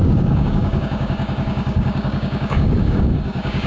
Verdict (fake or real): fake